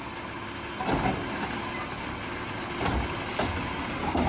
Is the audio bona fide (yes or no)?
yes